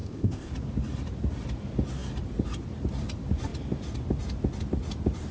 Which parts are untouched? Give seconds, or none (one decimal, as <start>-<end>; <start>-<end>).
0.5-5.3